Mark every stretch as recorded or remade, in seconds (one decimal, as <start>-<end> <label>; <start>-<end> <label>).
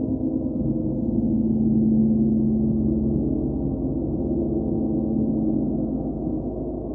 0.0-6.9 recorded